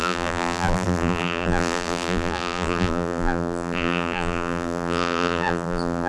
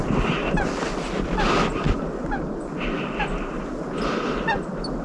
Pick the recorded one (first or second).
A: second